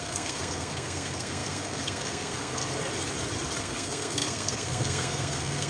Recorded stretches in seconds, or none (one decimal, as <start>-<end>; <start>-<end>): 2.6-3.6